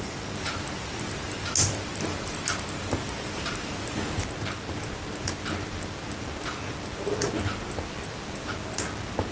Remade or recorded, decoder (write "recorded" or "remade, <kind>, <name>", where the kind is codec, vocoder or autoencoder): recorded